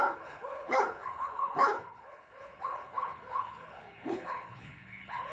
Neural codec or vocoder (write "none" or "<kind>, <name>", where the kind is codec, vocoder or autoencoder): codec, HILCodec